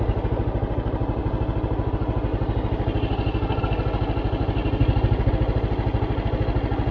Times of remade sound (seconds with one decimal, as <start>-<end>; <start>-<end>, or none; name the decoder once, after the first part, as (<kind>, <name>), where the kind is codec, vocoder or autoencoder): 2.3-3.6 (vocoder, BigVGAN v2); 4.6-5.3